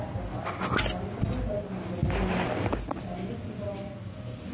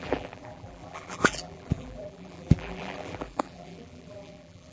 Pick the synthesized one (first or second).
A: second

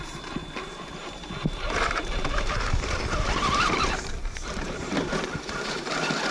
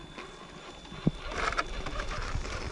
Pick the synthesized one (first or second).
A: first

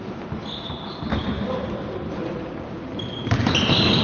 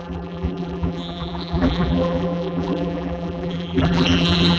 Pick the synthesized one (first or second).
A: second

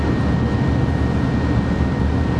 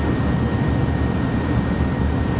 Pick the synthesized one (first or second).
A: second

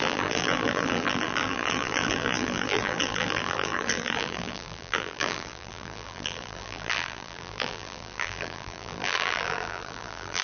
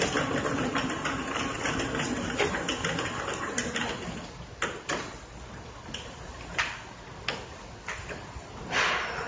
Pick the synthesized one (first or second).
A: first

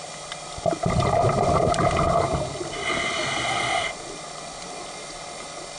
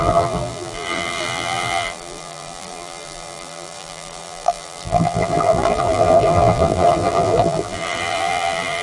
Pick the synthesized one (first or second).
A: second